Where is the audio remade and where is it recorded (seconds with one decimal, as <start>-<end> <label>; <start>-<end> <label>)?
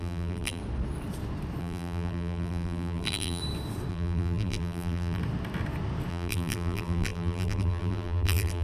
0.0-0.6 remade; 0.6-1.6 recorded; 1.6-3.4 remade; 3.4-3.9 recorded; 3.9-5.2 remade; 5.2-6.1 recorded; 6.1-8.6 remade